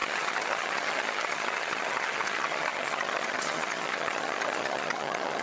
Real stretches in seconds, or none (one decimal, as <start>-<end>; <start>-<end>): none